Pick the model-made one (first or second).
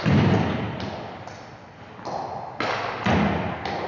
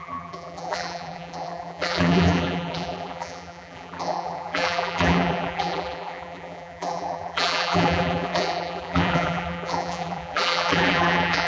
second